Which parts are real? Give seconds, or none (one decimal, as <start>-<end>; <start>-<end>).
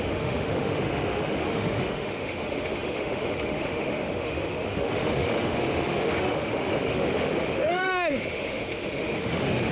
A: none